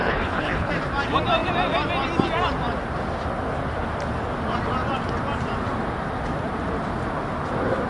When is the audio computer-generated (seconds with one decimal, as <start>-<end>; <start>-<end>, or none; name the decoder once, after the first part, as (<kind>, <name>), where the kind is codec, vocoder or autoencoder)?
0.0-0.7 (codec, HILCodec)